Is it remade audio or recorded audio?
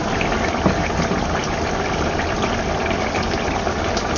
recorded